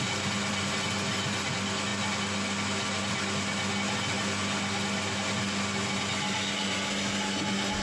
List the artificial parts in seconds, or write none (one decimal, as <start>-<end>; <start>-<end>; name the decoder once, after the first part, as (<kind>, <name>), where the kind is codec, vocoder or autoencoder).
none